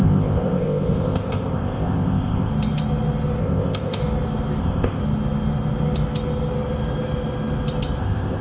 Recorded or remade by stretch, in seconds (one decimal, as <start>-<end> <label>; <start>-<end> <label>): 0.0-2.5 remade; 2.5-3.4 recorded; 3.4-4.0 remade; 4.0-4.6 recorded; 4.6-5.0 remade; 5.0-8.0 recorded; 8.0-8.4 remade